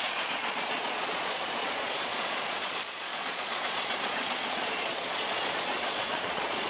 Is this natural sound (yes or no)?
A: no